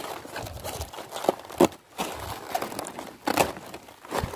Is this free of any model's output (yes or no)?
yes